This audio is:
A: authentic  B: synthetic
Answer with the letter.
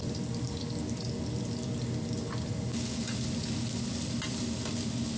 A